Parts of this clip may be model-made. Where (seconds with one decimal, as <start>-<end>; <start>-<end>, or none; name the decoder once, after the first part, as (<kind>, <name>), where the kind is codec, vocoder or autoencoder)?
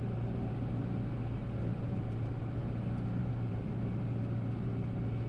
1.7-2.4 (vocoder, BigVGAN v2); 3.2-3.7